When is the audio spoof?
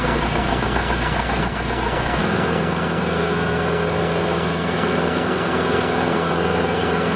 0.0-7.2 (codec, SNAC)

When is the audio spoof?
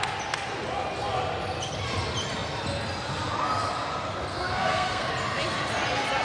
4.3-5.1 (codec, SNAC)